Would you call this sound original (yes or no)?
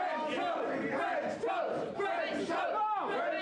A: yes